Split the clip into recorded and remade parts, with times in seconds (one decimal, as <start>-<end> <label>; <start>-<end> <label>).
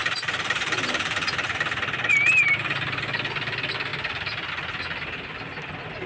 0.0-3.0 remade; 3.0-3.9 recorded; 3.9-4.5 remade; 4.5-6.1 recorded